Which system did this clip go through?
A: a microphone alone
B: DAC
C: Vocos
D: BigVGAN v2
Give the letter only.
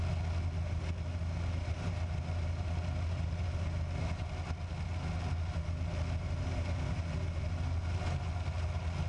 A